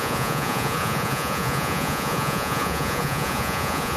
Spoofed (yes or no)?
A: yes